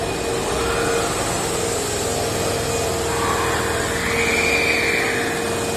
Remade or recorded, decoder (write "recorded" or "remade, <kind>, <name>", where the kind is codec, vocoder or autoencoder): recorded